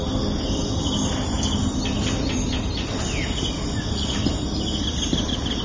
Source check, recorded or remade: recorded